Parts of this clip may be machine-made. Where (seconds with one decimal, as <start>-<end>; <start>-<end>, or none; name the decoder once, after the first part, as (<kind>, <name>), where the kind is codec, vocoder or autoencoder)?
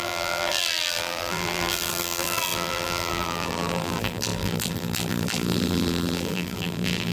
0.0-7.1 (vocoder, BigVGAN v2)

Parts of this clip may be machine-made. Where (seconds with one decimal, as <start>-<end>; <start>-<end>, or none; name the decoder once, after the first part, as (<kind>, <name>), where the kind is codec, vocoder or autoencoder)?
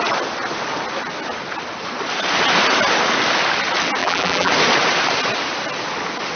4.0-4.5 (vocoder, BigVGAN v2)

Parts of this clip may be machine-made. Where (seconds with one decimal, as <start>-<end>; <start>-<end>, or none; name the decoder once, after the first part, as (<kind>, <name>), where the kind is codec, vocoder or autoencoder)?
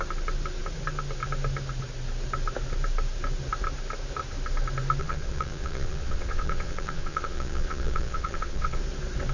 5.0-8.8 (vocoder, Vocos)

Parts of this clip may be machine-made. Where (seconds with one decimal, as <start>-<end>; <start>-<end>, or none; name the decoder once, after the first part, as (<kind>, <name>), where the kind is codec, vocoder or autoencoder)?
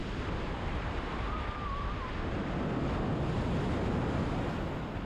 none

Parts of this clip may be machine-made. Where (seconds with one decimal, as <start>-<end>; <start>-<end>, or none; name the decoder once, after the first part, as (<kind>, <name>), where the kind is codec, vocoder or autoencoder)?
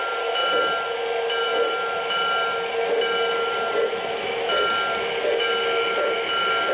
none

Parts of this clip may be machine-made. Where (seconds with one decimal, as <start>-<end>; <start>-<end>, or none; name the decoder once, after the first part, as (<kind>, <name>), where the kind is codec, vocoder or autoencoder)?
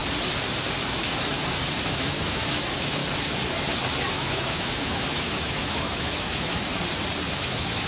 1.9-3.0 (autoencoder, DAC-VAE); 4.1-6.7; 7.3-7.9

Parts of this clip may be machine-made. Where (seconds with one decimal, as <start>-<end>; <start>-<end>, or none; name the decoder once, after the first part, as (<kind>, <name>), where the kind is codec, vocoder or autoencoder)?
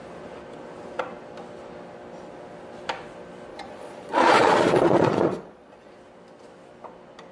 3.5-5.9 (vocoder, Vocos)